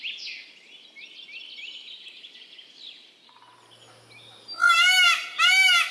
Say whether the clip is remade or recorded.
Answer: recorded